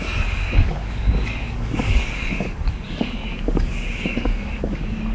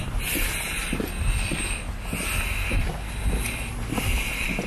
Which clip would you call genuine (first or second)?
second